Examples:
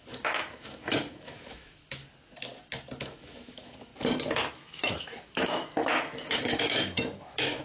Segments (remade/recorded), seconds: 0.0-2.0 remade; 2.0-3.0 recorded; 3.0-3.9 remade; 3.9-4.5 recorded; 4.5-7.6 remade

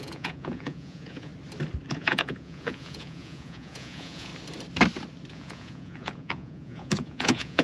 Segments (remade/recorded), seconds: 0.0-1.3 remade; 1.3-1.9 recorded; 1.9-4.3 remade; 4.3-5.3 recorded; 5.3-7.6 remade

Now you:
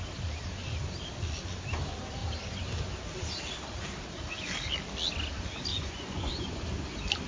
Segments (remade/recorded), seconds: 0.0-5.7 recorded; 5.7-6.6 remade; 6.6-7.3 recorded